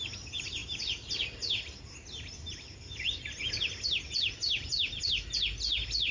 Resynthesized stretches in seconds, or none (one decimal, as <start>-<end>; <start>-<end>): none